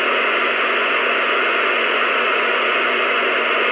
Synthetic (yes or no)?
yes